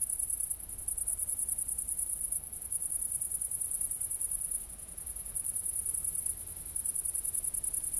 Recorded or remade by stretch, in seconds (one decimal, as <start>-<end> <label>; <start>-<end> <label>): 0.0-1.1 recorded; 1.1-5.9 remade; 5.9-8.0 recorded